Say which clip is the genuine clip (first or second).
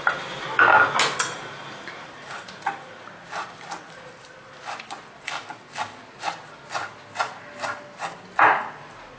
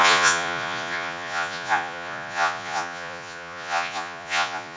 first